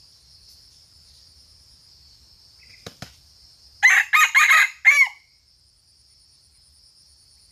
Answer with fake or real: real